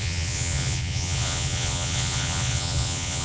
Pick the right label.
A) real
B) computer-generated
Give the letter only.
B